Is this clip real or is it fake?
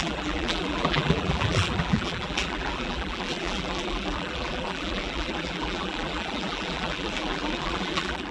fake